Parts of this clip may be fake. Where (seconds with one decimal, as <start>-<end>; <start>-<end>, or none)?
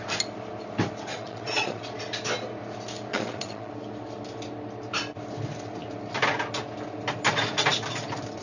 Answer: 1.1-1.8; 3.1-3.7